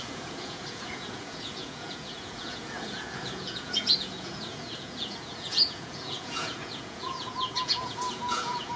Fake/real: fake